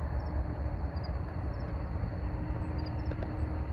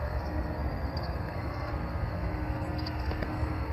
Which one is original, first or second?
first